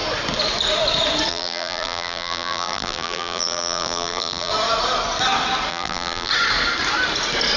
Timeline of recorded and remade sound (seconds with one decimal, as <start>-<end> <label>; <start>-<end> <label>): 0.0-1.3 recorded; 1.3-4.5 remade; 4.5-5.7 recorded; 5.7-6.3 remade; 6.3-7.6 recorded